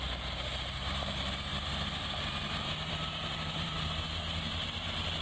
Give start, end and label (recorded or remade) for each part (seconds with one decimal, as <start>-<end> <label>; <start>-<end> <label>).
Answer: 0.0-1.5 recorded; 1.5-3.9 remade; 3.9-5.2 recorded